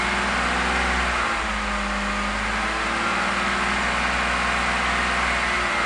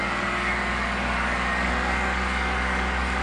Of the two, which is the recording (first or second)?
first